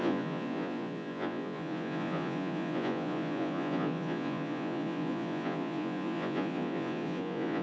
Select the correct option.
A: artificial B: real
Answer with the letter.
A